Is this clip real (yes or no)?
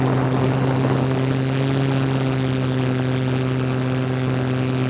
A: yes